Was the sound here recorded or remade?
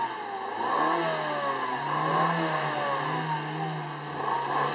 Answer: recorded